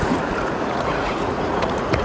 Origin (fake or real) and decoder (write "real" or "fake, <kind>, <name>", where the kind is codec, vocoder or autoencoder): fake, vocoder, Vocos